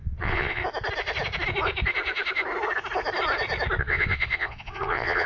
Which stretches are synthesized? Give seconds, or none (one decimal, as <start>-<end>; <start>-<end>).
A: 0.0-0.6; 3.8-5.3